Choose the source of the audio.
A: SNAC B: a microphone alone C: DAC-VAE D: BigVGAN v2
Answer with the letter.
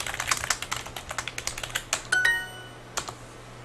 B